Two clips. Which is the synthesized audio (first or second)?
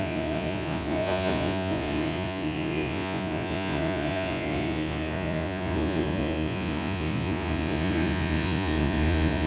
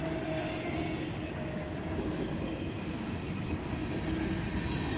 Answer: first